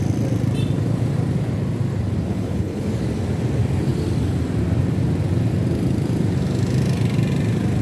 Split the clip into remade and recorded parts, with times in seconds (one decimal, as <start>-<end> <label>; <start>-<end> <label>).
0.0-2.3 recorded; 2.3-2.9 remade; 2.9-7.8 recorded